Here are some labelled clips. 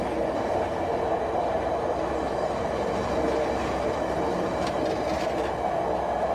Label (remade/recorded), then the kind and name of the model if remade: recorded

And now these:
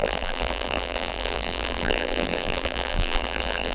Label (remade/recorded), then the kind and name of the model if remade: remade, vocoder, BigVGAN v2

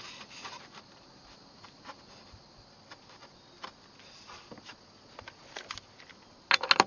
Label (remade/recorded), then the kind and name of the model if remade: recorded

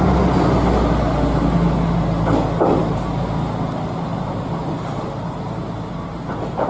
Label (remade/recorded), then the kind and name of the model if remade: recorded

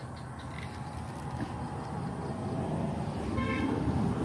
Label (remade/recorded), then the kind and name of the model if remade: recorded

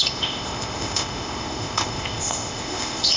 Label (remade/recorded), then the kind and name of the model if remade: remade, codec, ZipCodec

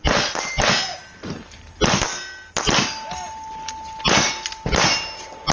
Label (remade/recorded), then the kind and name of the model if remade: recorded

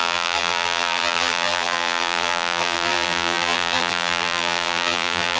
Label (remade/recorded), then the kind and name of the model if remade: remade, vocoder, BigVGAN v2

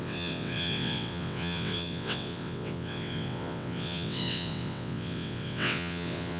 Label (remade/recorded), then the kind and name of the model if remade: remade, vocoder, WaveNeXt